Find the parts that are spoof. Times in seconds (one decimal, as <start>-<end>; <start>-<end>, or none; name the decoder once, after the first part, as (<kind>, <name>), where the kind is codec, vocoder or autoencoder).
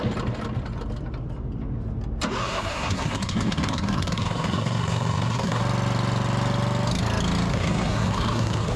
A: 2.4-5.6 (codec, SNAC); 7.5-8.8